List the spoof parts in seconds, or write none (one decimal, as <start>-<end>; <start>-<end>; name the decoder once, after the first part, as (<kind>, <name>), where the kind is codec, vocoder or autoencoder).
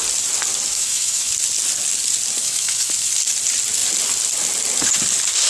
0.7-1.3 (autoencoder, DAC-VAE); 2.4-3.1